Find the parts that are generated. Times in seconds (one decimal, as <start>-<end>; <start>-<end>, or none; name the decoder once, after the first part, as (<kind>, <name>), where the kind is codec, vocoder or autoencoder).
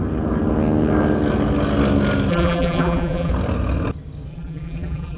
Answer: 2.3-3.3 (vocoder, BigVGAN v2); 4.3-5.2